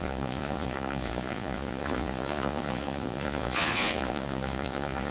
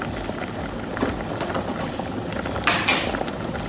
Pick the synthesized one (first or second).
first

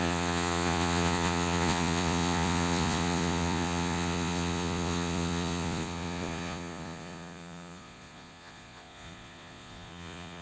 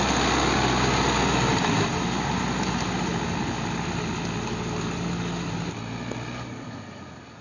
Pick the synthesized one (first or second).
first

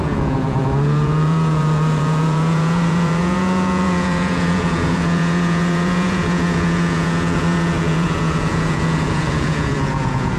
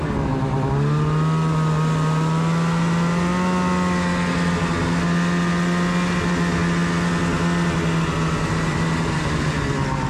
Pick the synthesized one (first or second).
first